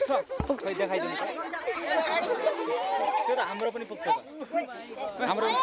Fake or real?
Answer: real